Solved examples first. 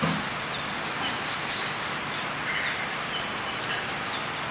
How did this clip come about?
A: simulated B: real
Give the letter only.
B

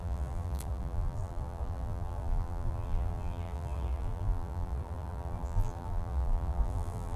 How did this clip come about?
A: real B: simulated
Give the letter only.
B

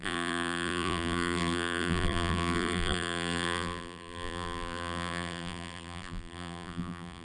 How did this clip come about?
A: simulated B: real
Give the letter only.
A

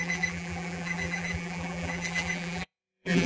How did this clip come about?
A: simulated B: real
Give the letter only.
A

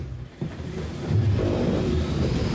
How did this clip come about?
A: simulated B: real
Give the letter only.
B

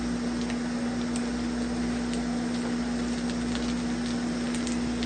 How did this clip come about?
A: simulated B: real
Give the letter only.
B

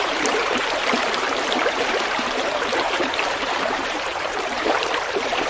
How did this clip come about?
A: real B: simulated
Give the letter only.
B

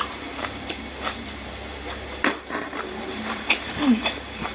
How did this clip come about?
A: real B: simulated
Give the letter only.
B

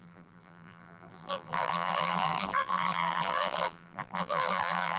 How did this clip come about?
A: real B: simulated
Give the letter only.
B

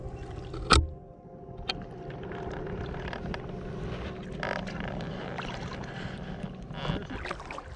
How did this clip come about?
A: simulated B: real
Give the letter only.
B